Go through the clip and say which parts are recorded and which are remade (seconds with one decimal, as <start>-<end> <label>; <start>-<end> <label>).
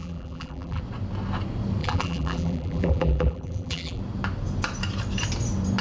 0.0-0.8 remade; 0.8-1.8 recorded; 1.8-4.0 remade; 4.0-5.8 recorded